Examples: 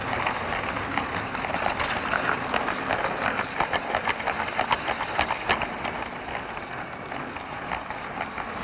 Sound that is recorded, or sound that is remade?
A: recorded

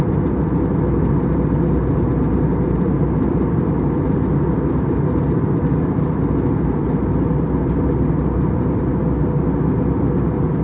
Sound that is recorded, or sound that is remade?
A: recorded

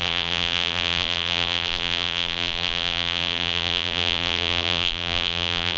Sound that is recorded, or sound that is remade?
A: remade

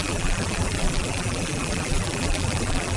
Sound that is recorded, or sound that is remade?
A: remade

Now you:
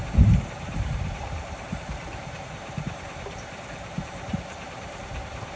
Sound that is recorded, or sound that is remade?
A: remade